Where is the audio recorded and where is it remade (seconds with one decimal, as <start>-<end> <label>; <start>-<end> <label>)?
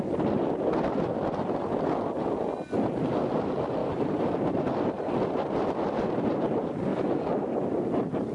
0.0-3.8 recorded; 3.8-4.5 remade; 4.5-8.3 recorded